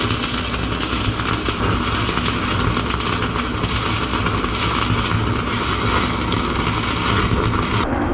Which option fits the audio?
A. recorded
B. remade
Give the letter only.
A